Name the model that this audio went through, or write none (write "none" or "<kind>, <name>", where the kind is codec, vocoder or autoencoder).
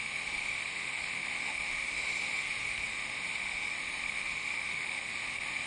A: autoencoder, DAC-VAE